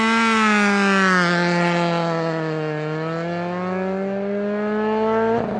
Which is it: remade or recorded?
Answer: recorded